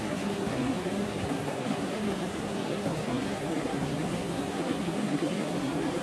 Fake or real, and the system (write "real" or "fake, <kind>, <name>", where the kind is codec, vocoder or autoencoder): fake, codec, SNAC